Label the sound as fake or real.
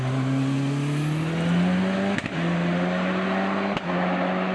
real